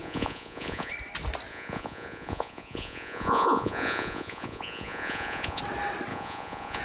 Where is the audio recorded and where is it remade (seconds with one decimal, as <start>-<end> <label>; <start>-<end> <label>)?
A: 0.0-0.9 remade; 0.9-1.5 recorded; 1.5-5.6 remade; 5.6-6.1 recorded; 6.1-6.8 remade